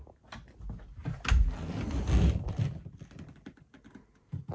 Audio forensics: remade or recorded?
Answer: recorded